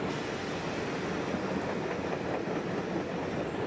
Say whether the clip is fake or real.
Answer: real